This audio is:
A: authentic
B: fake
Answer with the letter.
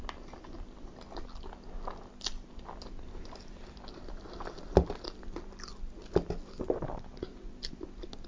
A